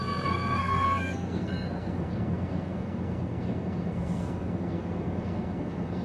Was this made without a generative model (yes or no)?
no